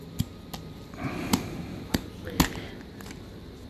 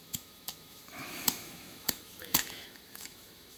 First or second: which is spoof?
second